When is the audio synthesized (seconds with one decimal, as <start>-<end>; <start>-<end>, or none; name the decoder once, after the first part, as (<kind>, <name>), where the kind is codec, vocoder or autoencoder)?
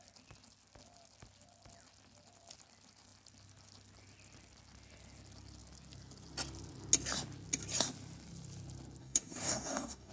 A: 9.0-10.1 (codec, DAC)